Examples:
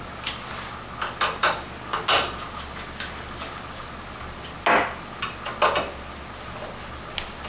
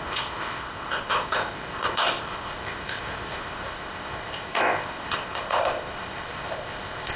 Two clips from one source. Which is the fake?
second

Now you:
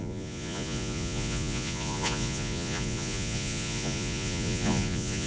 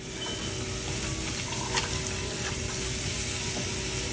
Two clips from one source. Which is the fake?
first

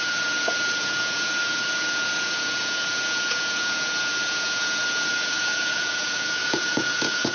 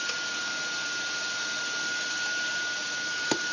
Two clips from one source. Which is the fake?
first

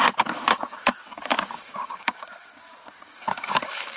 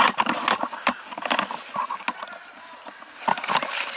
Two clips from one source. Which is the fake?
first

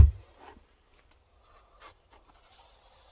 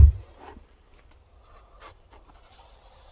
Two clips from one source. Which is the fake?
second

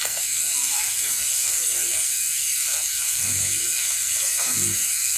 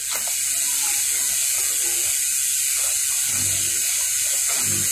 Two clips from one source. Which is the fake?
first